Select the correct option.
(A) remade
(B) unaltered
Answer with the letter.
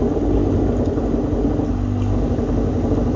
B